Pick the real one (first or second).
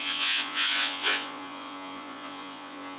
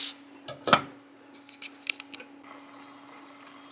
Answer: second